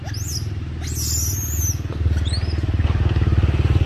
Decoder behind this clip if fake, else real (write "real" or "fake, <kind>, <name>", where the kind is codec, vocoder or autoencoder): real